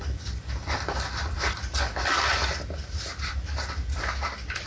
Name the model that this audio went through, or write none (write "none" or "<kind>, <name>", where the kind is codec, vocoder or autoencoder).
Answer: none